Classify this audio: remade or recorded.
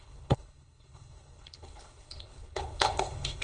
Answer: remade